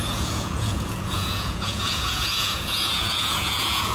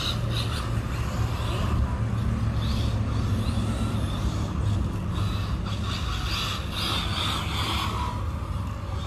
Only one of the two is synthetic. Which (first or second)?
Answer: first